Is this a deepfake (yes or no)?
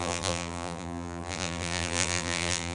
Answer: yes